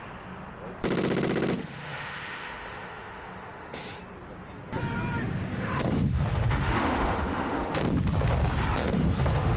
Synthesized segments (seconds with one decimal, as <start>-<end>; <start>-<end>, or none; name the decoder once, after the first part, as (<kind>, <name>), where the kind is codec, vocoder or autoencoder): 1.6-4.0 (autoencoder, DAC-VAE); 5.5-7.8; 8.8-9.6